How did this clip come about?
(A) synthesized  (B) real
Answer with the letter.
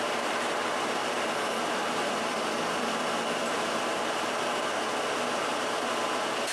B